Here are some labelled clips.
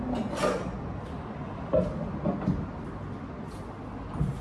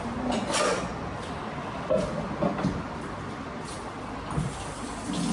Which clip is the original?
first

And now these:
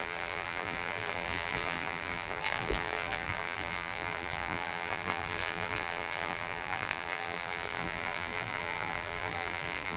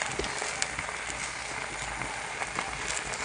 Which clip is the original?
second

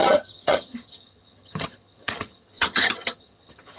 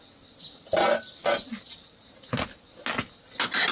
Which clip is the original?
second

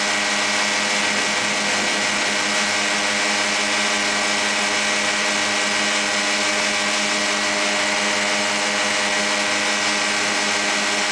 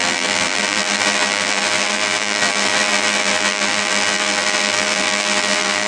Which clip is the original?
first